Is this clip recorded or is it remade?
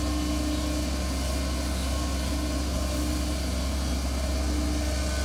recorded